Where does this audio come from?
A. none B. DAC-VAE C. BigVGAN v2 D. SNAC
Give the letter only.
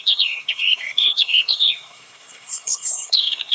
D